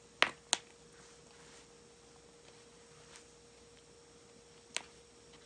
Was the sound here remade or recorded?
recorded